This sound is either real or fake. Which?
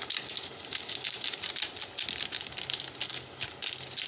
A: real